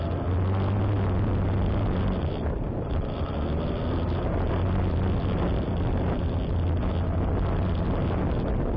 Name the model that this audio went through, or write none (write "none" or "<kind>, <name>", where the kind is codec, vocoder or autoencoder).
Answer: none